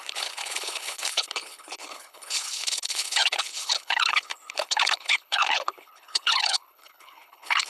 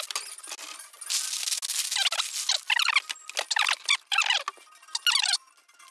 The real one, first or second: second